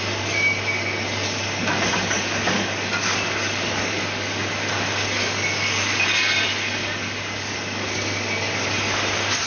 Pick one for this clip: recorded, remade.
remade